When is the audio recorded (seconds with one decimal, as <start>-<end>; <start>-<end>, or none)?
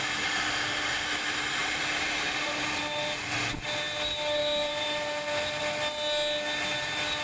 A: 0.0-1.6; 2.8-4.4; 5.6-7.2